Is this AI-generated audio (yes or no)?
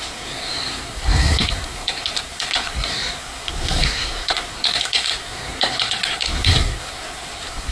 yes